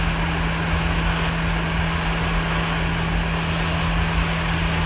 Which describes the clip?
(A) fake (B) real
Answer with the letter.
B